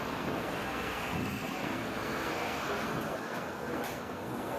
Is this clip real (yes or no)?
no